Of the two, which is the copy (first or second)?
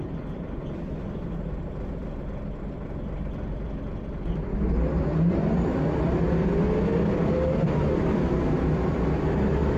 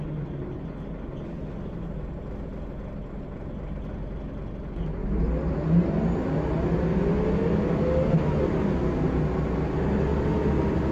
first